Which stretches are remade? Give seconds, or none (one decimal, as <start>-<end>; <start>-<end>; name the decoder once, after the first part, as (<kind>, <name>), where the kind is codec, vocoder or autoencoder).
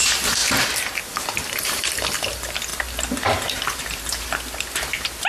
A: none